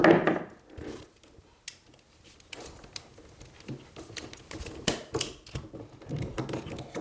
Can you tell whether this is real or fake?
real